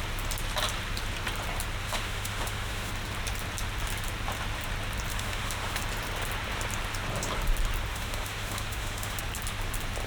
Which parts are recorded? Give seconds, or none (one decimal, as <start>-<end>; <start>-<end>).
0.0-1.8; 2.9-5.1; 5.8-7.9; 9.2-10.1